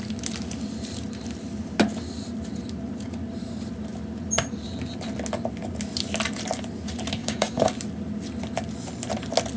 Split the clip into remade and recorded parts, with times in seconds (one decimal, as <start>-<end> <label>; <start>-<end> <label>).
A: 0.0-7.2 recorded; 7.2-7.7 remade; 7.7-9.6 recorded